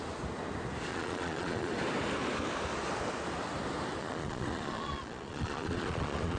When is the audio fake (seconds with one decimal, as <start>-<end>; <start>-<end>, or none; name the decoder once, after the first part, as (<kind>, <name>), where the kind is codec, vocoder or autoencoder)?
0.9-1.7 (vocoder, Vocos); 4.0-6.4